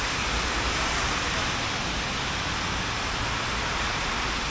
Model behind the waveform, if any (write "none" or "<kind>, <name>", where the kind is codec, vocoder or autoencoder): none